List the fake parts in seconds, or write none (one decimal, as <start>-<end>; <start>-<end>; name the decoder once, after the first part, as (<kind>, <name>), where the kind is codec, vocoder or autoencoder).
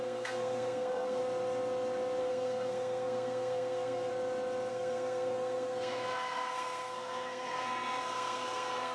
0.0-1.2 (codec, SNAC); 2.2-4.1; 4.7-8.9